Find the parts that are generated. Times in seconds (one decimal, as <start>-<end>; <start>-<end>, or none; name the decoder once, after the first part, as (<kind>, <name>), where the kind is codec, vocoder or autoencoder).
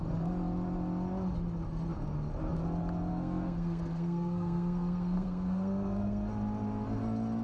3.1-6.3 (codec, SNAC)